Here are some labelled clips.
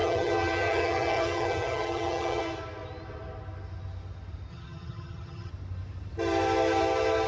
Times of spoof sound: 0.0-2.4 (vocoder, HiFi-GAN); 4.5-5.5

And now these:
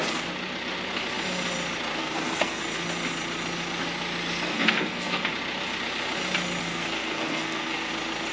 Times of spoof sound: 2.0-2.6 (codec, SNAC); 4.5-5.3; 6.6-7.9

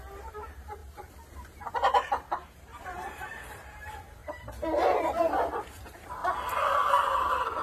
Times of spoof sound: 0.0-0.8 (vocoder, BigVGAN v2); 1.7-6.2; 6.9-7.6

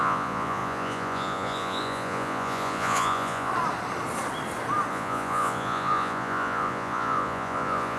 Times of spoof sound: 0.0-3.5 (vocoder, Vocos); 4.9-8.0

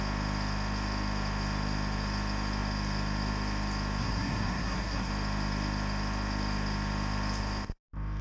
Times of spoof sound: 4.0-5.1 (codec, SNAC)

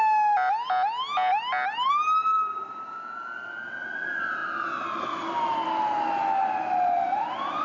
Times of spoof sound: none